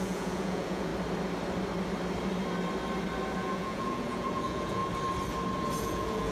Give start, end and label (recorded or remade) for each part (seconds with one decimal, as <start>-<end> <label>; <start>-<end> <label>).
0.0-0.9 remade; 0.9-3.4 recorded; 3.4-4.8 remade; 4.8-5.8 recorded; 5.8-6.3 remade